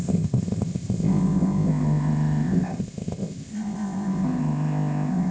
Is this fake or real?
fake